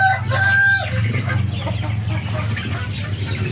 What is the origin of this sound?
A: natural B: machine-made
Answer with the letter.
A